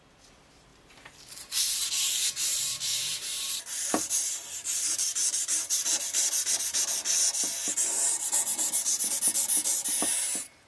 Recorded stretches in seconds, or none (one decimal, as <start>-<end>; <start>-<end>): 0.0-0.7; 1.9-2.5; 6.8-8.1; 9.1-10.7